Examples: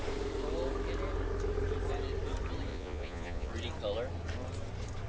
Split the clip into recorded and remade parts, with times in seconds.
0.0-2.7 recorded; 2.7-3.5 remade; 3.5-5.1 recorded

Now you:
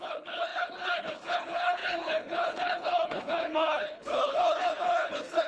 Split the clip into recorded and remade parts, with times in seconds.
0.0-5.5 remade

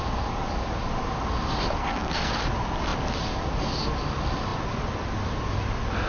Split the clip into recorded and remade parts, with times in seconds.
0.0-1.8 recorded; 1.8-2.3 remade; 2.3-6.1 recorded

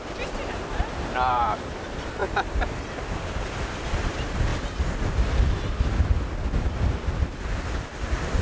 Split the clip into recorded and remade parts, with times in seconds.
0.0-8.4 recorded

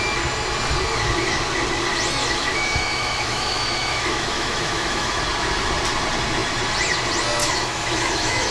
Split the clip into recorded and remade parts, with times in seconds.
0.0-2.2 recorded; 2.2-5.2 remade; 5.2-7.4 recorded; 7.4-8.5 remade

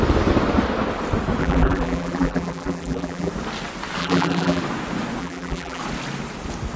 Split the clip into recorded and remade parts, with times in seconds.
0.0-1.4 recorded; 1.4-3.3 remade; 3.3-4.0 recorded; 4.0-4.6 remade; 4.6-5.2 recorded; 5.2-5.8 remade; 5.8-6.8 recorded

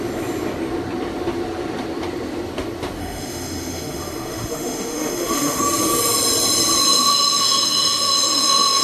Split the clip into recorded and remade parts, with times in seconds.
0.0-3.0 recorded; 3.0-5.6 remade; 5.6-6.8 recorded; 6.8-8.8 remade